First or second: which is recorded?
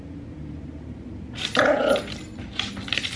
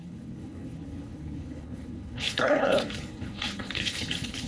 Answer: first